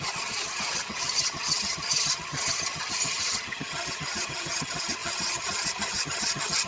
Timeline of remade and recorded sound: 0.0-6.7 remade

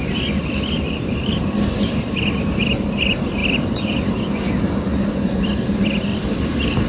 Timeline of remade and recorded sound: 0.0-3.4 recorded; 3.4-4.5 remade; 4.5-6.1 recorded; 6.1-6.9 remade

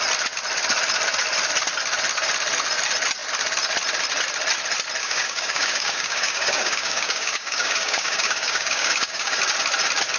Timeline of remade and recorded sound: 0.0-5.0 recorded; 5.0-9.4 remade; 9.4-10.2 recorded

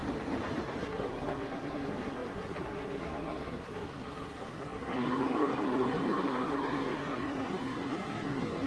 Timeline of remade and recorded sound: 0.0-0.8 recorded; 0.8-8.7 remade

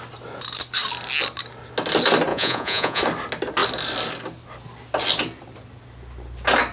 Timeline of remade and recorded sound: 0.0-2.3 recorded; 2.3-3.0 remade; 3.0-6.7 recorded